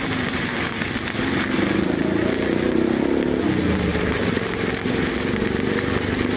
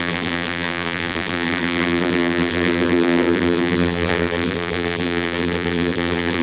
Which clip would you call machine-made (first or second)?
second